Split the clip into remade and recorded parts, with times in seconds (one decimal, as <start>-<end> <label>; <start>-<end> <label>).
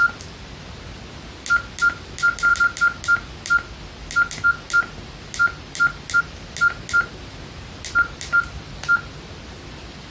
0.0-10.1 recorded